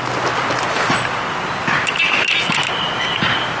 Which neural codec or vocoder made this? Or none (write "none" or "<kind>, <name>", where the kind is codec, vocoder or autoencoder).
none